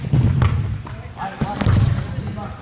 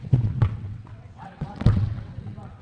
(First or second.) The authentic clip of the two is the first